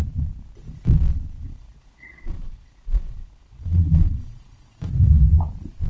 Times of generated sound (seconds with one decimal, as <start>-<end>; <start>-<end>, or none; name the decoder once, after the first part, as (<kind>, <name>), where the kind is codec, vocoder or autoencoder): 1.4-4.9 (vocoder, Vocos)